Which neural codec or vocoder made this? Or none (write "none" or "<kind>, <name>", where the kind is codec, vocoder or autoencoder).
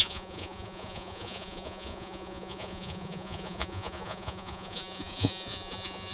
vocoder, Vocos